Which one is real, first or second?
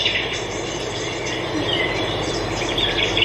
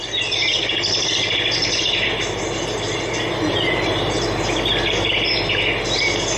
second